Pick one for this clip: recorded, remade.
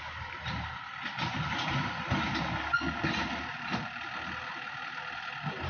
recorded